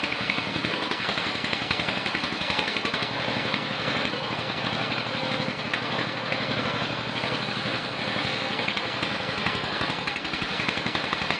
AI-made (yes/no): yes